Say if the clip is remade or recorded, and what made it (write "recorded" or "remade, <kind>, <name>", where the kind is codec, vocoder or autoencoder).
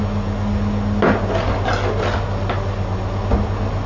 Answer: recorded